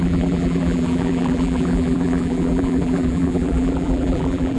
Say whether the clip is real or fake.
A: fake